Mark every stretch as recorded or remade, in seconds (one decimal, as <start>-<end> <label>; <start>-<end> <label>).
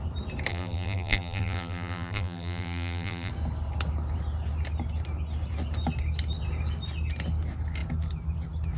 0.0-0.5 recorded; 0.5-3.3 remade; 3.3-8.8 recorded